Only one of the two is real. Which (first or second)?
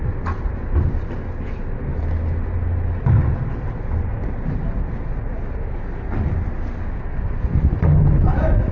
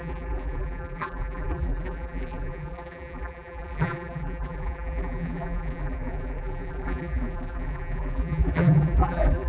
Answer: first